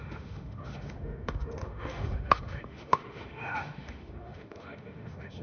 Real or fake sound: fake